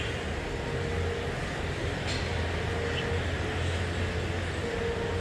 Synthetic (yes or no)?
no